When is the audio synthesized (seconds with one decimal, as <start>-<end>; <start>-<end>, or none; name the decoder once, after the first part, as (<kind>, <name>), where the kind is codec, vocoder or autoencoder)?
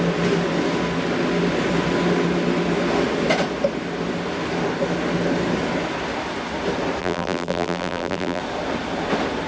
7.0-8.4 (vocoder, BigVGAN v2)